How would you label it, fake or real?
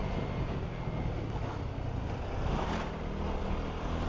real